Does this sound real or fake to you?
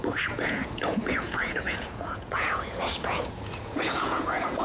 fake